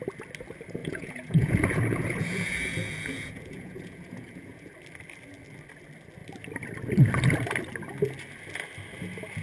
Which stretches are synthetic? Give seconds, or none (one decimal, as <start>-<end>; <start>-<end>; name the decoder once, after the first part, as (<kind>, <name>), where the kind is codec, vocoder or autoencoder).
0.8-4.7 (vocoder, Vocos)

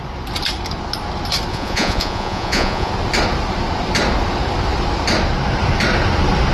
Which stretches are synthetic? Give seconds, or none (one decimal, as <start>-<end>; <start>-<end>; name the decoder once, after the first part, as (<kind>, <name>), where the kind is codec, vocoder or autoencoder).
1.5-2.9 (vocoder, Vocos)

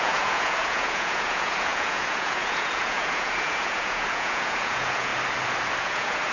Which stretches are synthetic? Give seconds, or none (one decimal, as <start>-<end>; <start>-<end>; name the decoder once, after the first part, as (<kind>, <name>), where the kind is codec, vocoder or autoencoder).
0.0-5.1 (vocoder, Vocos); 5.8-6.3

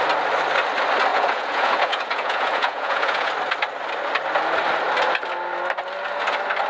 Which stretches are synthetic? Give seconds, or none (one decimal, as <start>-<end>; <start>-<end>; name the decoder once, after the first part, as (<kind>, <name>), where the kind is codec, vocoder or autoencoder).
1.1-3.3 (vocoder, Vocos)

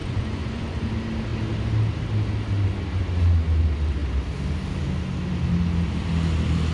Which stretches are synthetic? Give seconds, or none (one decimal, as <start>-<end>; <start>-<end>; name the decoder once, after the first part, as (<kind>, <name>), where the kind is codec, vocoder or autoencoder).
0.0-0.9 (vocoder, Vocos)

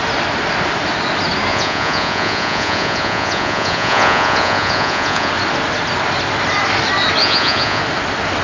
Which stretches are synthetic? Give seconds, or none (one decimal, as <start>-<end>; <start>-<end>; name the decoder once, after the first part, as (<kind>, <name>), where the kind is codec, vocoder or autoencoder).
1.5-5.3 (vocoder, Vocos); 7.2-7.8